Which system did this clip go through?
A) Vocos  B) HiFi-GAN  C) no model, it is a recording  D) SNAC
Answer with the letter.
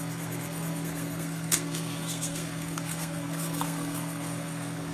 D